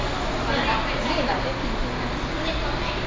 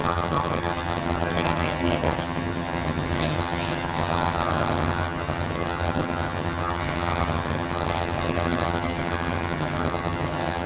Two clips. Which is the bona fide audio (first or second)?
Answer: first